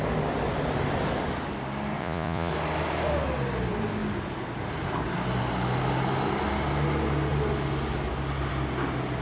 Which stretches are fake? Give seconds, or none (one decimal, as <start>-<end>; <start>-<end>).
2.0-2.5